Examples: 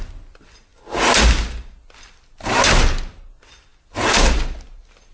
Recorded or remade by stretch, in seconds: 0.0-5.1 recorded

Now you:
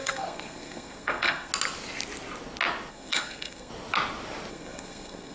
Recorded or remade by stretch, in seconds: 0.0-1.5 remade; 1.5-2.9 recorded; 2.9-3.7 remade; 3.7-4.5 recorded; 4.5-5.3 remade

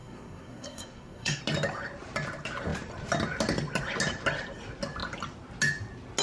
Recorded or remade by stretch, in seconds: 0.0-1.4 remade; 1.4-6.2 recorded